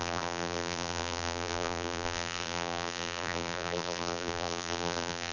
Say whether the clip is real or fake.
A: fake